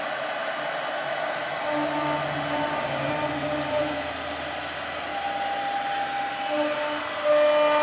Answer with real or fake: real